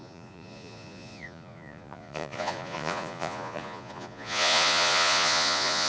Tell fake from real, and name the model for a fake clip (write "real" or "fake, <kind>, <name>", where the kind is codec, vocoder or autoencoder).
fake, vocoder, Vocos